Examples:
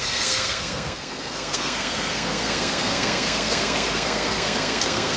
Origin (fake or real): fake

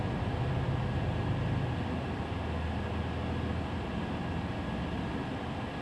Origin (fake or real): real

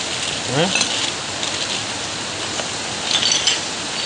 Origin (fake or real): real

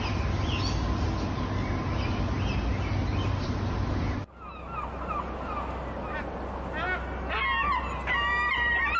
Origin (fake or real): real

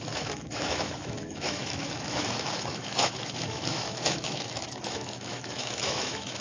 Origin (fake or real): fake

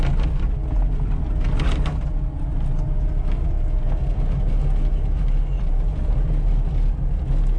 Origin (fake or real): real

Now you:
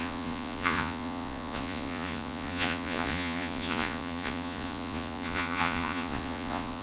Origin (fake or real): fake